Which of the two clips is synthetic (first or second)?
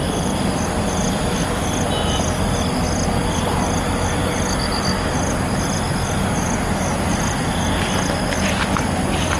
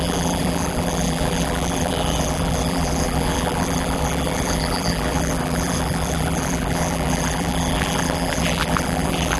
second